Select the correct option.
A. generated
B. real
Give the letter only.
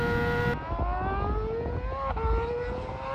B